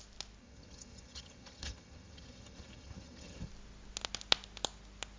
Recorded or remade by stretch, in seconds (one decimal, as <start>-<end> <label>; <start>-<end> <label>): 0.0-0.4 recorded; 0.4-3.5 remade; 3.5-5.2 recorded